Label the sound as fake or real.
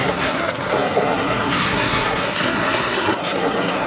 fake